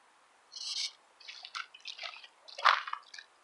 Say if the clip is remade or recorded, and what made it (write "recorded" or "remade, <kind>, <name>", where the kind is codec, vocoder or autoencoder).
recorded